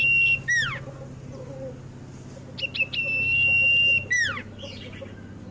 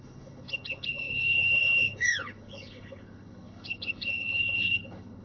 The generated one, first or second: second